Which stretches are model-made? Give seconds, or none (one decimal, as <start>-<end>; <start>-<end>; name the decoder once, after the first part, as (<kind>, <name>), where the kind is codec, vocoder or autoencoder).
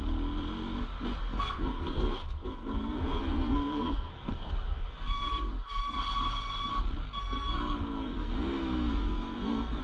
1.2-6.0 (codec, SNAC); 7.0-9.8